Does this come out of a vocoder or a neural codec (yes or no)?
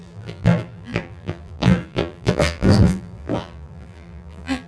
yes